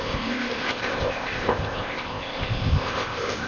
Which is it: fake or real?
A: fake